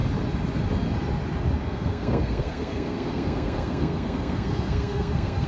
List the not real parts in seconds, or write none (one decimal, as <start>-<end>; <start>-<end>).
1.6-5.5